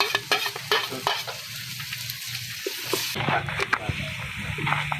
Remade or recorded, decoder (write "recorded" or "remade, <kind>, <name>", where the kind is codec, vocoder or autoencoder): recorded